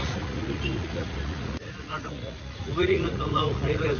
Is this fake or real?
fake